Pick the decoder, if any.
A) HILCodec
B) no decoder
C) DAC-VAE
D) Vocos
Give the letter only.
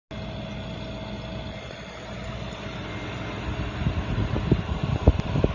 B